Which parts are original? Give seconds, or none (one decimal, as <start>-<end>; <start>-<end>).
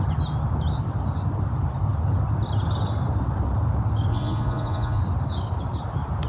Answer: 0.0-4.1; 5.0-6.3